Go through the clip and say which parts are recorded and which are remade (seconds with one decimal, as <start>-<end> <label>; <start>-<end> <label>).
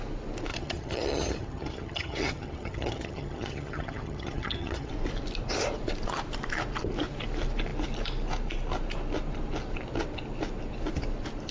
0.0-0.5 recorded; 0.5-4.9 remade; 4.9-11.5 recorded